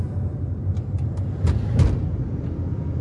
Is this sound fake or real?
real